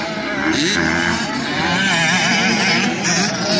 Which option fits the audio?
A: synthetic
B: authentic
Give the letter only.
B